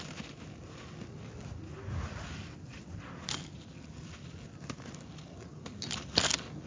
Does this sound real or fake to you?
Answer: real